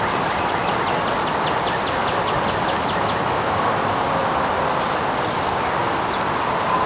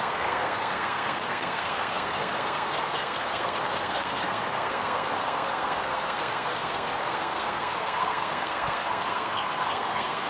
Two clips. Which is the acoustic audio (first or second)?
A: first